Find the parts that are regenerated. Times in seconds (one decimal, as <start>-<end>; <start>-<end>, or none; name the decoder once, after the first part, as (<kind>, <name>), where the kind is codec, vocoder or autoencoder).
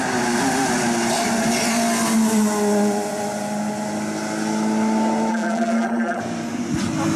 5.3-6.2 (vocoder, BigVGAN v2)